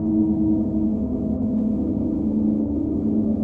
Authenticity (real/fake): fake